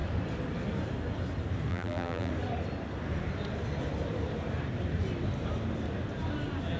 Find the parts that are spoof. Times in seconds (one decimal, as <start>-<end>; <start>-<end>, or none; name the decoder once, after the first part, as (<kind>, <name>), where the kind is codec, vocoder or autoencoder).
1.7-2.3 (vocoder, BigVGAN v2)